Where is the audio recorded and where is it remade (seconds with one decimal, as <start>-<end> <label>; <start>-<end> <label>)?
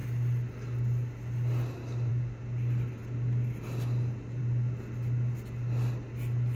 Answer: 0.0-6.6 recorded